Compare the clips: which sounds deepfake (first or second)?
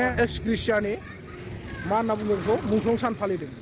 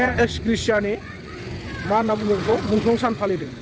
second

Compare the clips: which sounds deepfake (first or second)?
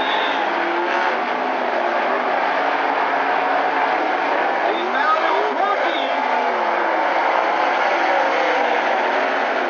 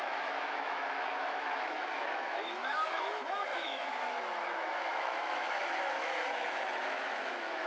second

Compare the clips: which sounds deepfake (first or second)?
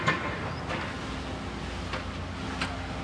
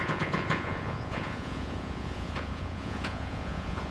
second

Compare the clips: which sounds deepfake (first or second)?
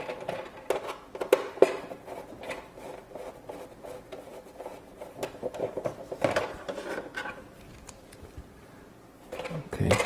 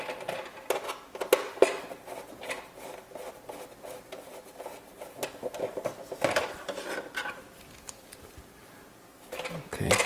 first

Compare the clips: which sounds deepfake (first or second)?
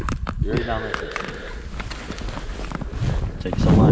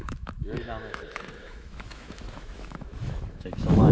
second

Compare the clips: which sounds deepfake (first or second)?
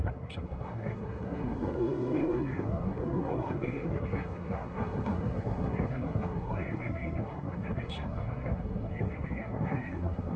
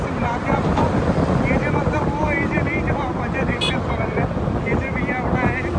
first